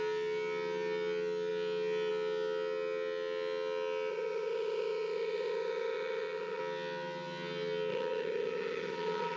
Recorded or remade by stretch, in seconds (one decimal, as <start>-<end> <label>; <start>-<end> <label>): 0.0-4.1 recorded; 4.1-6.6 remade; 6.6-7.9 recorded; 7.9-9.4 remade